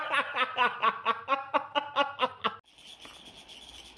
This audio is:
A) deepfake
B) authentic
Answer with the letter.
B